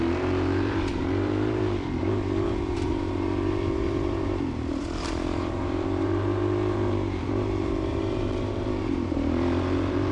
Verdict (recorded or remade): remade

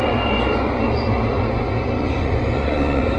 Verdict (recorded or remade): remade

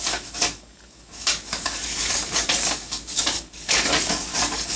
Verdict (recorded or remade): remade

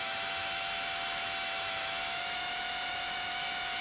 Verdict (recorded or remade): remade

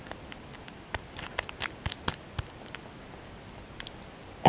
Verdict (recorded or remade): recorded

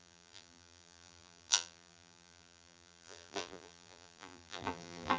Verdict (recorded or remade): remade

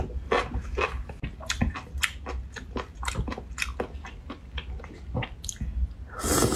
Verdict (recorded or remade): recorded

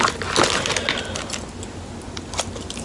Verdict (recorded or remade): recorded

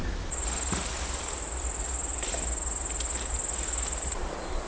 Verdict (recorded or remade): recorded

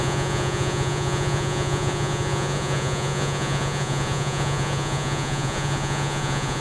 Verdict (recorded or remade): remade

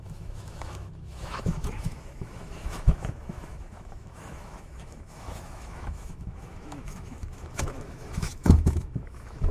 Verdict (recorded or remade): remade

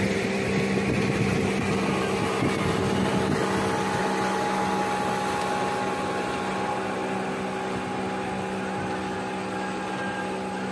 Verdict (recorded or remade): recorded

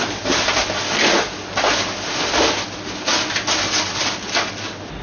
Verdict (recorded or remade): recorded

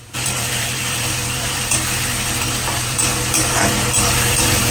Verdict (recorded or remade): remade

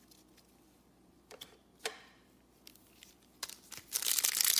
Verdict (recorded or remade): recorded